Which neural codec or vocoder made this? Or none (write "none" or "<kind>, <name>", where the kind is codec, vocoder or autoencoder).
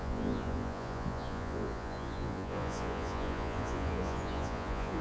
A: vocoder, Vocos